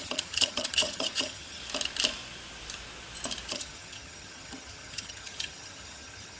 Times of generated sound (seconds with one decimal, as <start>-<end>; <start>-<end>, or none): 0.0-1.6; 3.5-6.4